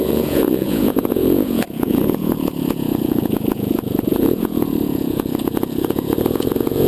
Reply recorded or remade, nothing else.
remade